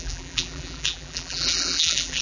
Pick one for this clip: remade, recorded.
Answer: remade